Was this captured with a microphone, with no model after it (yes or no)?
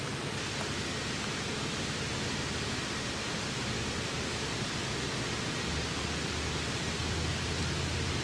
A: yes